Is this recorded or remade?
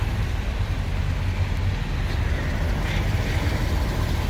recorded